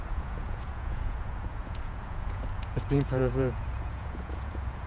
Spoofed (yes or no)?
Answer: yes